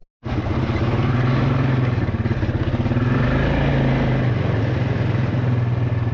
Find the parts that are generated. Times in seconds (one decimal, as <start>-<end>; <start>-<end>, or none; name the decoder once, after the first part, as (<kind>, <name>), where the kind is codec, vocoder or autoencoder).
none